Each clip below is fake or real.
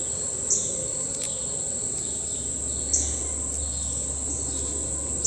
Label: real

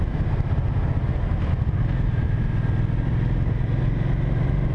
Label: real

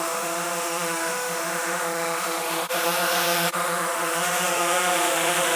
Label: fake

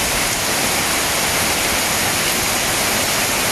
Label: real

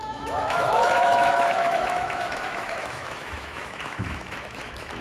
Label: fake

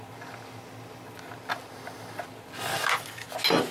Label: real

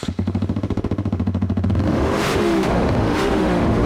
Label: fake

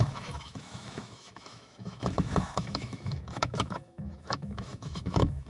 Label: fake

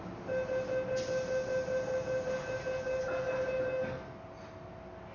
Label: real